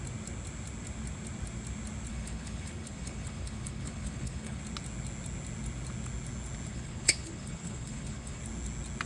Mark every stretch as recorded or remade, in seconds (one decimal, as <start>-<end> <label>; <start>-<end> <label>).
0.0-2.1 recorded; 2.1-4.6 remade; 4.6-6.7 recorded; 6.7-8.4 remade; 8.4-9.1 recorded